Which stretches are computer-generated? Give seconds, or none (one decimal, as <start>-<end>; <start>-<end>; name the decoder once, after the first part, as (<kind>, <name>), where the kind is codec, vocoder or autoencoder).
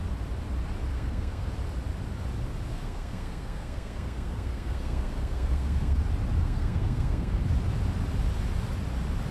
0.9-1.5 (codec, SNAC); 2.7-6.0; 6.4-7.4